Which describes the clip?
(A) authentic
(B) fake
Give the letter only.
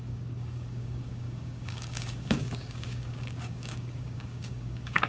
B